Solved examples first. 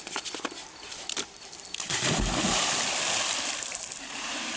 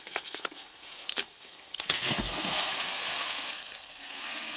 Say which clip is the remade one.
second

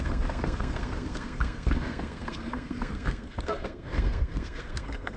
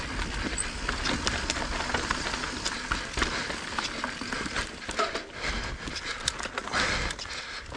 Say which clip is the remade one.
first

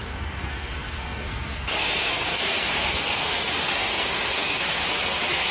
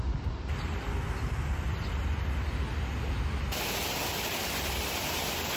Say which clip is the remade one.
first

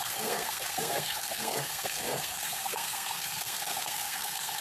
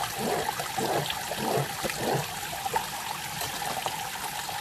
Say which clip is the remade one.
first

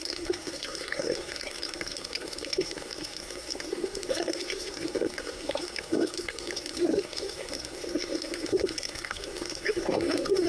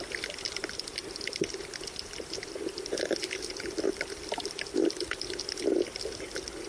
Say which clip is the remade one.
first